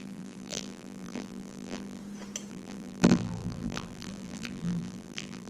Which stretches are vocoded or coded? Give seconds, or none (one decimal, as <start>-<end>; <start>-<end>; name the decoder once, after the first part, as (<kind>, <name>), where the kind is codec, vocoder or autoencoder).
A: 0.0-2.0 (vocoder, BigVGAN v2); 2.5-5.5